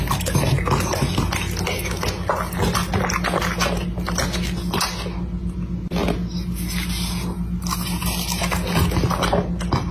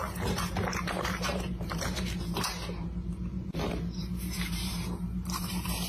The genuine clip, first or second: first